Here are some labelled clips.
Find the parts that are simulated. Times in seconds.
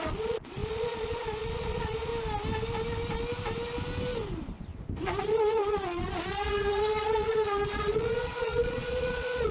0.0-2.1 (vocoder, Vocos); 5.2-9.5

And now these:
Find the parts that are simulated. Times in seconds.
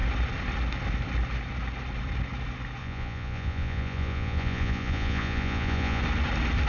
2.8-6.0 (vocoder, Vocos)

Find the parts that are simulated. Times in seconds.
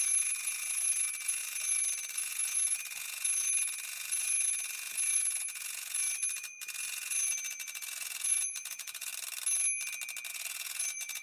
0.0-9.1 (vocoder, Vocos); 10.3-11.2